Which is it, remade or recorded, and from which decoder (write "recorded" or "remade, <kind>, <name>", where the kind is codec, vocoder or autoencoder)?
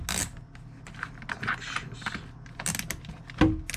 recorded